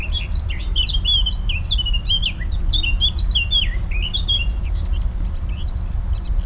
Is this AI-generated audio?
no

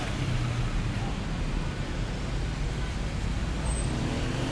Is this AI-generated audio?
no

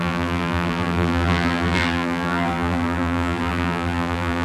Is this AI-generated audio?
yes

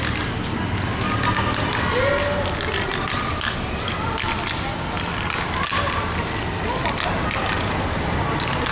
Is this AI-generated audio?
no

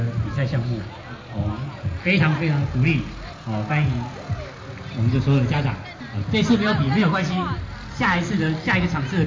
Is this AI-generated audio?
no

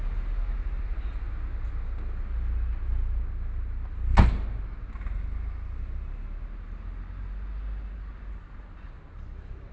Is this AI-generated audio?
no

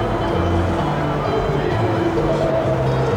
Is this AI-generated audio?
no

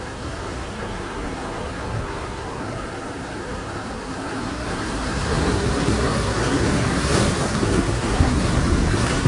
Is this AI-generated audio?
yes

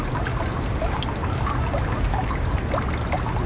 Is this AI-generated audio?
no